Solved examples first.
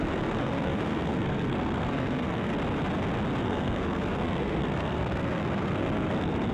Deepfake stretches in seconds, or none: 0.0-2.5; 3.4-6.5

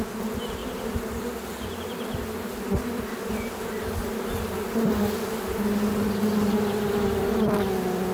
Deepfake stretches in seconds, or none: none

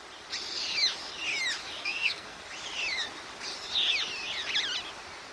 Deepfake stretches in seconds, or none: 1.8-2.4

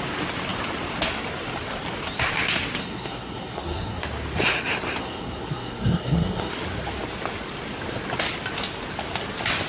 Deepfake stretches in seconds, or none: 2.8-4.0; 5.0-6.5